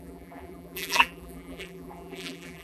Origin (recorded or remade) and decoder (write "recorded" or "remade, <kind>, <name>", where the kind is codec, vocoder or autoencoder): remade, vocoder, BigVGAN v2